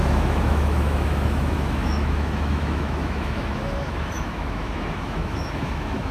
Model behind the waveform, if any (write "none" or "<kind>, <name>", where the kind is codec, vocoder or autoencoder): autoencoder, DAC-VAE